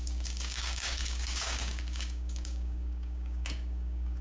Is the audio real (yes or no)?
no